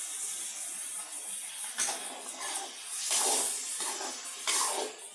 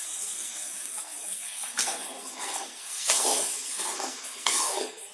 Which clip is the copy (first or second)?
second